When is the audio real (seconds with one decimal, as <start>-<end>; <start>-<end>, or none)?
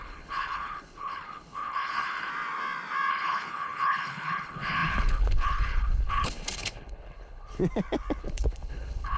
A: 2.3-3.1; 7.6-8.2